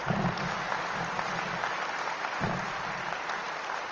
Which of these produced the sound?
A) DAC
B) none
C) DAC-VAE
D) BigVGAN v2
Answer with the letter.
B